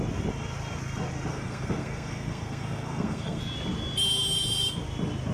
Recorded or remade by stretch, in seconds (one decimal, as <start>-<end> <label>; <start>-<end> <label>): 0.0-1.3 recorded; 1.3-3.4 remade; 3.4-5.3 recorded